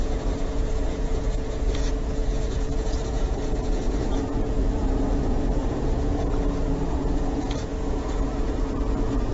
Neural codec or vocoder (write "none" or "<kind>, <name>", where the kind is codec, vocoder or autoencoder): vocoder, Vocos